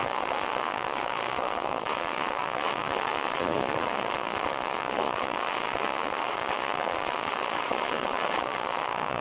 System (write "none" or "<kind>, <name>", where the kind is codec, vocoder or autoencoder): vocoder, Vocos